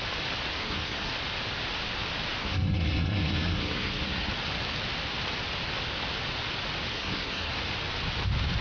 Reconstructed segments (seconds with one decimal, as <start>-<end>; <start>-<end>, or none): 0.6-1.1; 2.4-4.3; 6.9-7.5